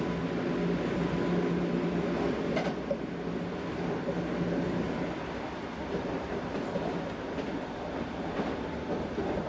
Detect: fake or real real